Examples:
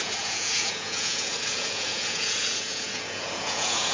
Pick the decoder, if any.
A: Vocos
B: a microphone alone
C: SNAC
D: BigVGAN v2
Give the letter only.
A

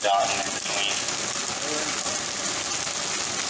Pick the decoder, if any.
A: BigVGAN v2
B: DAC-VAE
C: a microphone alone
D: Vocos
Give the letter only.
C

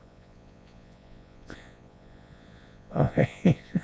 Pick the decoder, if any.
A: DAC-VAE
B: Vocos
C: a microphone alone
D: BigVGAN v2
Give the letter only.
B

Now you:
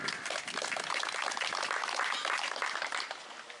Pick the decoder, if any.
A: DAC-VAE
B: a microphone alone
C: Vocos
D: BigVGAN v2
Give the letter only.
B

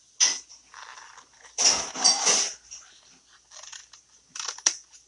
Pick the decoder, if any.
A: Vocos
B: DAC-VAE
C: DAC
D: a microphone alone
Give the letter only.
D